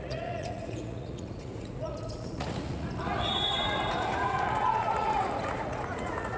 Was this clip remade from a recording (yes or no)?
yes